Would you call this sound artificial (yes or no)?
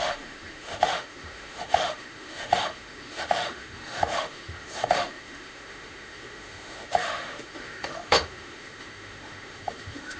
yes